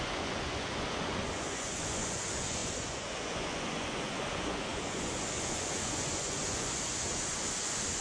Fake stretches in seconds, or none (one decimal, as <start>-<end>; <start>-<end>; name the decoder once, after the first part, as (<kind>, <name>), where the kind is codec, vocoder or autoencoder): 0.0-8.0 (vocoder, Vocos)